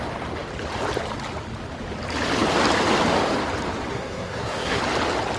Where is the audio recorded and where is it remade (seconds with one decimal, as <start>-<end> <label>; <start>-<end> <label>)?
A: 0.0-3.9 recorded; 3.9-4.8 remade; 4.8-5.4 recorded